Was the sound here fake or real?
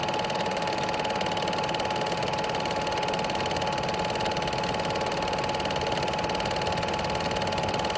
real